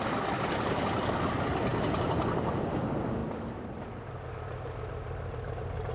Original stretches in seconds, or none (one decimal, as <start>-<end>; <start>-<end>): 0.0-5.9